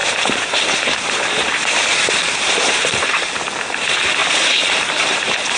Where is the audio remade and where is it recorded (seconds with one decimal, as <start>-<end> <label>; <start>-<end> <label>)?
0.0-3.4 remade; 3.4-4.2 recorded; 4.2-5.6 remade